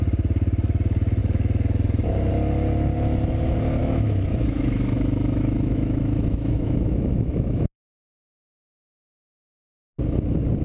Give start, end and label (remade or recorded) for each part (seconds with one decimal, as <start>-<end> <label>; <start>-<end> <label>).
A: 0.0-3.8 recorded; 3.8-8.8 remade; 8.8-10.6 recorded